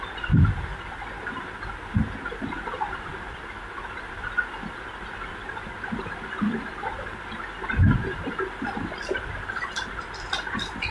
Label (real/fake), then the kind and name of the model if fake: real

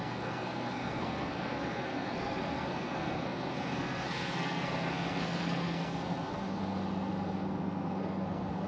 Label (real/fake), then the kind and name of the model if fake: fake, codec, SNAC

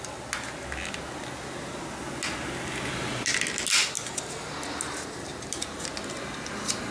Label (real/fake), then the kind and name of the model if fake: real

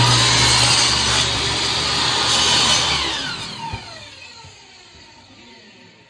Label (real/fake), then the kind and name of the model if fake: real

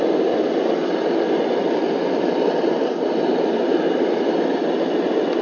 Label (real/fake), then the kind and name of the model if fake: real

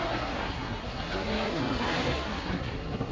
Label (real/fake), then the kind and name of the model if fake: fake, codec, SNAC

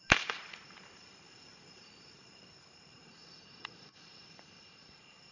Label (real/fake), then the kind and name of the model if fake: fake, vocoder, BigVGAN v2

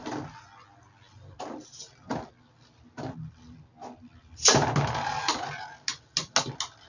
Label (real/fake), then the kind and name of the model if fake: real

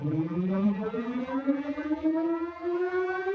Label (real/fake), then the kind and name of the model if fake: fake, vocoder, BigVGAN v2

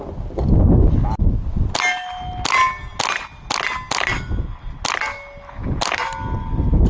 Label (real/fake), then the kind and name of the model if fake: real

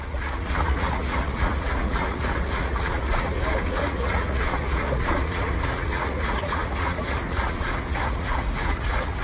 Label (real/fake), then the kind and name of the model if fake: fake, vocoder, Vocos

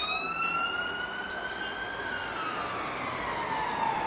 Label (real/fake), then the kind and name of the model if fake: real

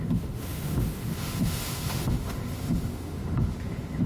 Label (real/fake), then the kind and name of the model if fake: fake, autoencoder, DAC-VAE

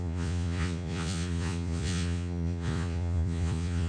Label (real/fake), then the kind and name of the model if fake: fake, vocoder, Vocos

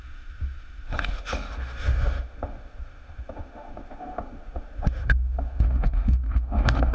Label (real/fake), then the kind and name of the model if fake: fake, autoencoder, DAC-VAE